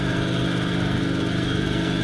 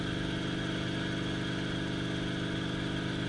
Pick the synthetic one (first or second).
first